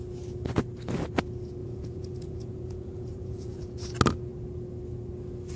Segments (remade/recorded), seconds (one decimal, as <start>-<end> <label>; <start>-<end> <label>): 0.0-1.6 recorded; 1.6-3.6 remade; 3.6-5.6 recorded